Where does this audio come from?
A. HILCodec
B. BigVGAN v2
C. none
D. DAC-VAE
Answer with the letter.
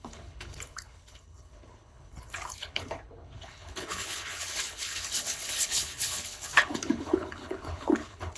A